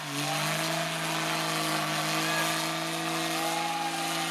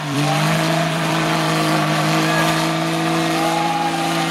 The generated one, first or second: second